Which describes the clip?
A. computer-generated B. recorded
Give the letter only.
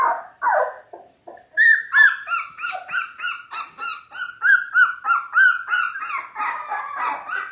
B